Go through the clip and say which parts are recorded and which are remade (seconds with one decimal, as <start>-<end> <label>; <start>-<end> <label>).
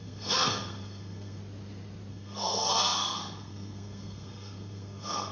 0.0-1.4 remade; 1.4-2.1 recorded; 2.1-5.3 remade